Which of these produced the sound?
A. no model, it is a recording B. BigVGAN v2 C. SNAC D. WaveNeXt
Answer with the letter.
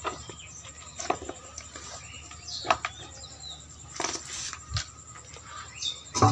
A